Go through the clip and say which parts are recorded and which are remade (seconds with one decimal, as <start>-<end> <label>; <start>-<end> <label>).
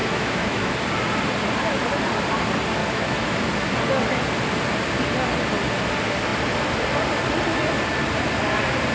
0.0-0.7 remade; 0.7-2.8 recorded; 2.8-3.5 remade; 3.5-8.9 recorded